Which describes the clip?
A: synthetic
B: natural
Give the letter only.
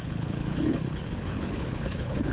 A